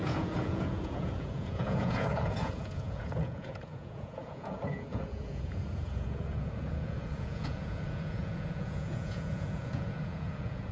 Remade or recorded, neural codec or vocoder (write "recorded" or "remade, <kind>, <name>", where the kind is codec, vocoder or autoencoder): remade, vocoder, Vocos